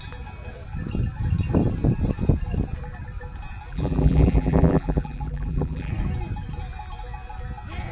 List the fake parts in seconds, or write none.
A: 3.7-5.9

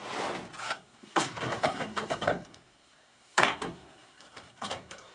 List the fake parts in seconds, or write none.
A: 0.6-5.1

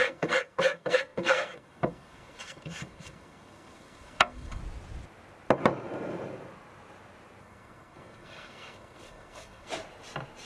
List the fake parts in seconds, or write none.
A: 0.0-4.6; 7.4-9.7